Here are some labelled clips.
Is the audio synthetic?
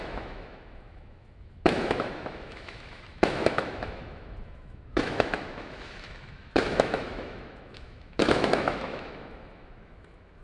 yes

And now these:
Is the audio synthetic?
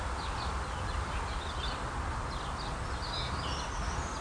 no